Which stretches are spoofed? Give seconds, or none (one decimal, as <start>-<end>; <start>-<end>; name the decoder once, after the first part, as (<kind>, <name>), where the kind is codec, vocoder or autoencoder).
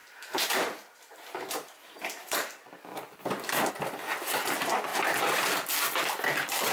0.0-3.7 (vocoder, BigVGAN v2)